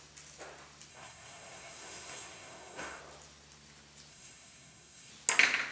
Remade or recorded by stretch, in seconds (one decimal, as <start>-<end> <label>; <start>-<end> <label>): 0.0-0.9 recorded; 0.9-3.0 remade; 3.0-4.1 recorded; 4.1-5.1 remade; 5.1-5.7 recorded